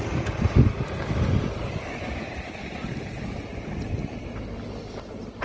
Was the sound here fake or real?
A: real